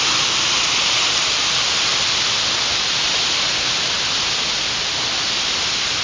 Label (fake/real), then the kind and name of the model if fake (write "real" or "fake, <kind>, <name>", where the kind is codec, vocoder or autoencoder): real